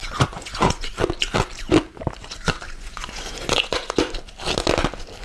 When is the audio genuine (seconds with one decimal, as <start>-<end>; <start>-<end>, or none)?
0.9-2.2; 4.0-5.2